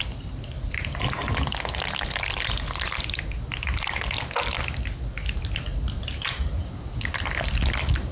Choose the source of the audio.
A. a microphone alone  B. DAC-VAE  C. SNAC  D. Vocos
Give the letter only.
A